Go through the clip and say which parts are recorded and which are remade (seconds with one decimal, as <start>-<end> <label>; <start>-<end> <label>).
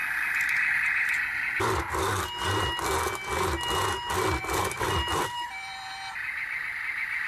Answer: 0.0-4.4 recorded; 4.4-7.3 remade